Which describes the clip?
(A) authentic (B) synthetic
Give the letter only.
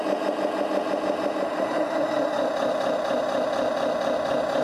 A